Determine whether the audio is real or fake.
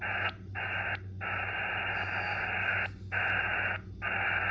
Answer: real